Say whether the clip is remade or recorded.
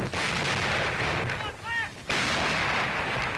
recorded